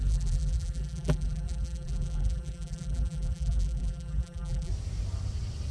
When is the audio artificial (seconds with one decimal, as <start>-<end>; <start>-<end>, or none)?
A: 0.0-4.7

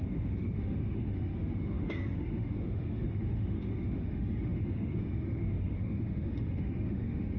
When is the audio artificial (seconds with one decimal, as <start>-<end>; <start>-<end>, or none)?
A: 0.0-7.4

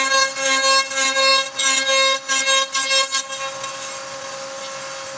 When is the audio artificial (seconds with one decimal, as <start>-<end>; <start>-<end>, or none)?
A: none